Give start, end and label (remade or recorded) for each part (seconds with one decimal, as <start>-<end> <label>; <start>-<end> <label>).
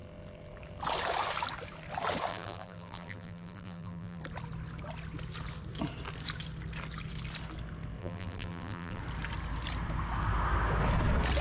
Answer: 0.0-2.3 recorded; 2.3-4.2 remade; 4.2-8.0 recorded; 8.0-9.0 remade; 9.0-11.4 recorded